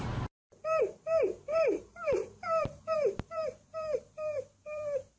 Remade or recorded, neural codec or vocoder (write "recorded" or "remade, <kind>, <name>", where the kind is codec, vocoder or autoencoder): remade, vocoder, BigVGAN v2